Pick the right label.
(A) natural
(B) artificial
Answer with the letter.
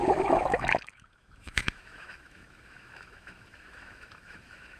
B